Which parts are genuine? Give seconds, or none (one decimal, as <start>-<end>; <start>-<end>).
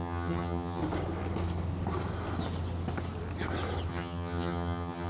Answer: 0.8-3.9